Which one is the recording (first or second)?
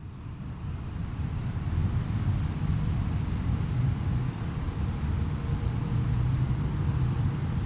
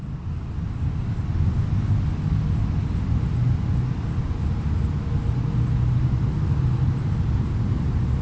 second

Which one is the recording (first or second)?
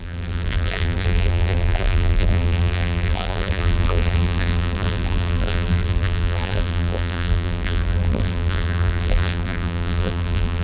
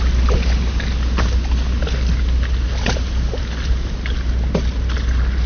second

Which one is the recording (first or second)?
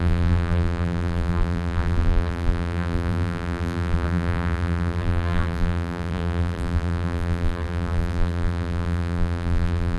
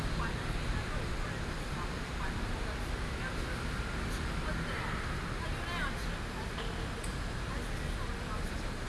second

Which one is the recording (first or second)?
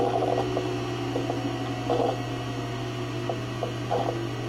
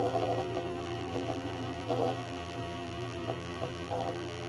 first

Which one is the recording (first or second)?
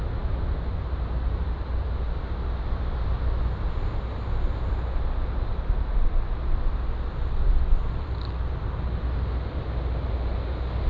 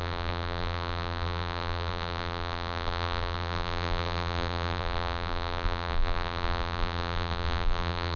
first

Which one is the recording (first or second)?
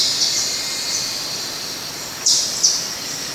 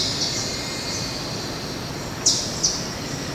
second